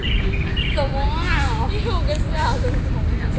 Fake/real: real